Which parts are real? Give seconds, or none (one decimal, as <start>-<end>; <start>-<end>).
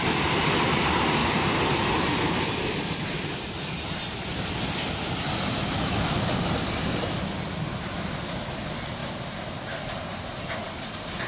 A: 0.0-11.3